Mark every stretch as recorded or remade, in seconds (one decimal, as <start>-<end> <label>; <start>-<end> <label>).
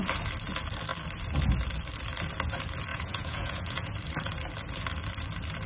0.0-2.9 recorded; 2.9-3.9 remade; 3.9-5.7 recorded